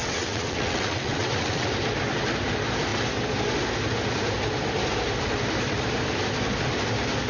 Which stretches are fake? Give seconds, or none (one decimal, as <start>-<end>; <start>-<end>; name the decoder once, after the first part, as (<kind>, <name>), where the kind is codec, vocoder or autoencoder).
0.0-1.7 (vocoder, WaveNeXt)